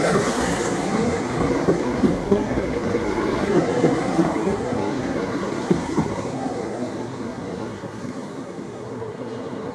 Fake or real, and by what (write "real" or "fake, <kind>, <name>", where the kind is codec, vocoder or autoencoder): fake, codec, SNAC